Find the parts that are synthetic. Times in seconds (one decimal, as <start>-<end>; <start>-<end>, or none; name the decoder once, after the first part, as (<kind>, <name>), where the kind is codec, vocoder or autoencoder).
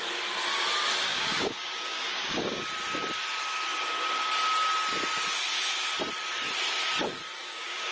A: 1.1-2.6 (codec, DAC); 7.4-7.9